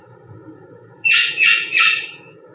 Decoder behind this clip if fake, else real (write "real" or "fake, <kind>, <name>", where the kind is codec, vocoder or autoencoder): fake, vocoder, Vocos